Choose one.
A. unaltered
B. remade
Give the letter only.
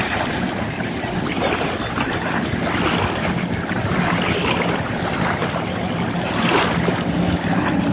A